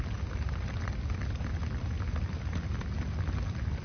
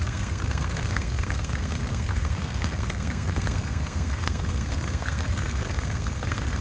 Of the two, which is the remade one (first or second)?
second